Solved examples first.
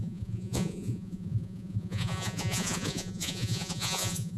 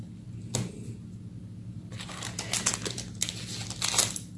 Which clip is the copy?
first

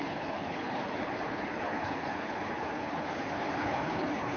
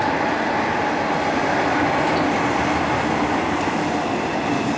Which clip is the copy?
first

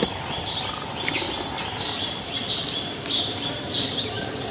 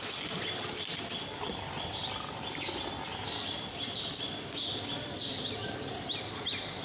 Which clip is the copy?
first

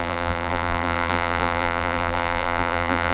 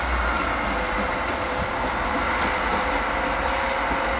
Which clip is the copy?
first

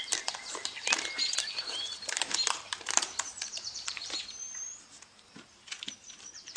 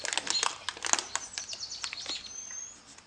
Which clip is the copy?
first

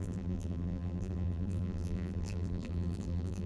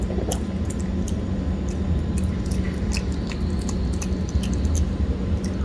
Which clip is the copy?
first